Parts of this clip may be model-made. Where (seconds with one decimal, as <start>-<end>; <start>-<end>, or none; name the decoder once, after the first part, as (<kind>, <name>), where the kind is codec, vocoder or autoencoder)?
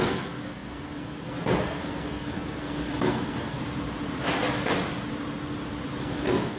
0.0-3.6 (codec, SNAC); 6.0-6.6